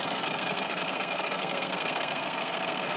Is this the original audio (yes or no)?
no